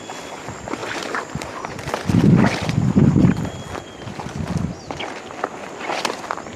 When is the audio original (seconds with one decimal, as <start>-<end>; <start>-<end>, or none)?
0.0-0.8; 1.5-3.0; 4.4-6.6